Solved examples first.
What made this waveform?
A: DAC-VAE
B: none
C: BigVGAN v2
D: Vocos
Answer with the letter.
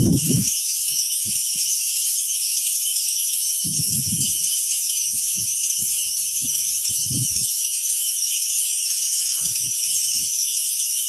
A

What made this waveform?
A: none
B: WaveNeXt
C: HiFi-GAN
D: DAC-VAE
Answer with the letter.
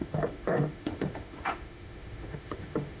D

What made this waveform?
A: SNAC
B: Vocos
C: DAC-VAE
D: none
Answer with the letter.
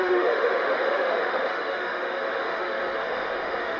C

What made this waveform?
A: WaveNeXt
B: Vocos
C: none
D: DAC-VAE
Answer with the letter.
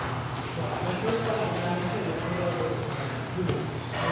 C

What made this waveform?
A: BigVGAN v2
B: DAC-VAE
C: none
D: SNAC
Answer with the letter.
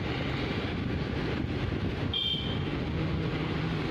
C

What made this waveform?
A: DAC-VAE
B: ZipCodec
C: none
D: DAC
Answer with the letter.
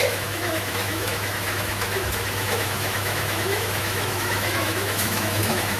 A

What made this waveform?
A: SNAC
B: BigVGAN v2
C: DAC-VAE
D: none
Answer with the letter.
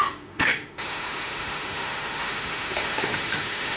C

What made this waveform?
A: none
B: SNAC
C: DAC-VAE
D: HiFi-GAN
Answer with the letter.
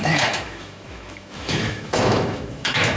C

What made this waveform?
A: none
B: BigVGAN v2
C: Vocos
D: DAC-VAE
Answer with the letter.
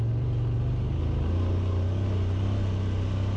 A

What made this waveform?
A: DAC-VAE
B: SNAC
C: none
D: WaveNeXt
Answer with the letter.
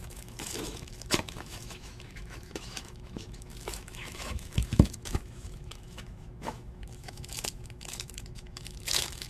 A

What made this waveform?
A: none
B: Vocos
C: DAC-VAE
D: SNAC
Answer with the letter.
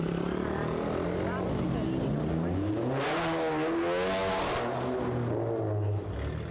A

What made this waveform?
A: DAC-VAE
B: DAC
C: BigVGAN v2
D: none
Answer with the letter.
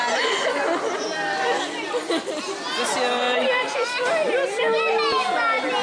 D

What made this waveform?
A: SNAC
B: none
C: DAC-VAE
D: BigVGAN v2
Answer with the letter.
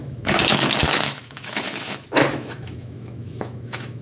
C